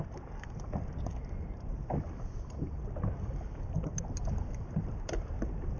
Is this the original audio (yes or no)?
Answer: yes